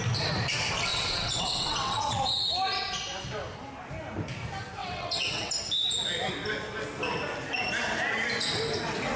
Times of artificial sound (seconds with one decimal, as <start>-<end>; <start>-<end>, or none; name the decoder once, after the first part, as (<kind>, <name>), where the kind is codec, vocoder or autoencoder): 0.9-2.4 (vocoder, WaveNeXt); 4.8-5.5